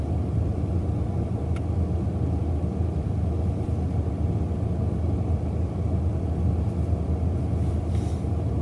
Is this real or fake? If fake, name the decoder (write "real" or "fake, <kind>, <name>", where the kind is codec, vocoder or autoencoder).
fake, vocoder, BigVGAN v2